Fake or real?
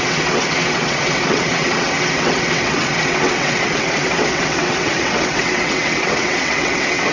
fake